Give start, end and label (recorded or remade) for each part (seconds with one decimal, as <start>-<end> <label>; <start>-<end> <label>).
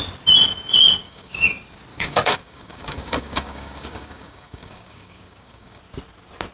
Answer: 0.0-1.0 recorded; 1.0-1.5 remade; 1.5-1.9 recorded; 1.9-5.8 remade; 5.8-6.5 recorded